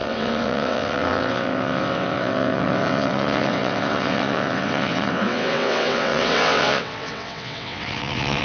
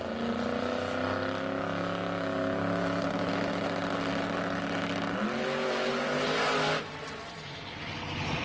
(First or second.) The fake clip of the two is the first